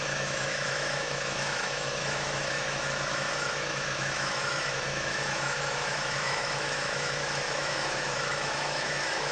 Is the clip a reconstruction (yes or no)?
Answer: yes